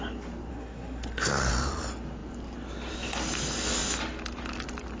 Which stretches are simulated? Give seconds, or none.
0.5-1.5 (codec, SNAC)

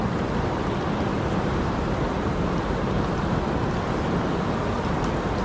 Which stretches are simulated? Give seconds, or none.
1.1-3.3 (vocoder, BigVGAN v2)

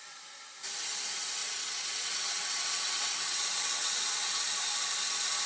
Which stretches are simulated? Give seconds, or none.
1.4-4.4 (vocoder, WaveNeXt)

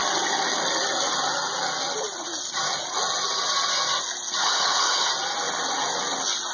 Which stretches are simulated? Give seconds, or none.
4.4-5.1 (codec, HILCodec)

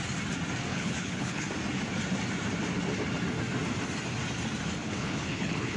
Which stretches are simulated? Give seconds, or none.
0.7-1.5 (codec, HILCodec); 4.8-5.8

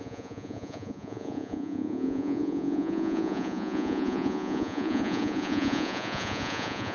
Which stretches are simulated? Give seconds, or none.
0.0-6.9 (vocoder, Vocos)

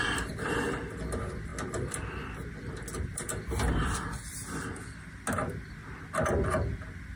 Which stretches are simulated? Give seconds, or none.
3.1-4.1 (vocoder, BigVGAN v2)

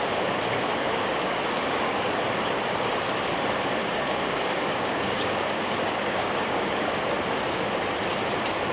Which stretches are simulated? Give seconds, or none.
0.7-2.1 (codec, DAC); 3.8-6.9